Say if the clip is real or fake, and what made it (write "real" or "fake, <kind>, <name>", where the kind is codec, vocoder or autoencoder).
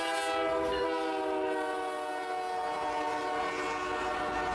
real